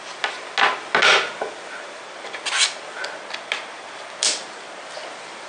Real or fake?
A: real